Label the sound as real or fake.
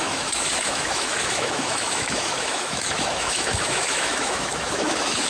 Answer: fake